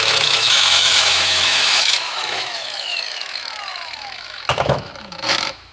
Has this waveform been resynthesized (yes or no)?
yes